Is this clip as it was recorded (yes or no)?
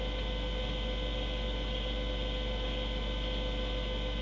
yes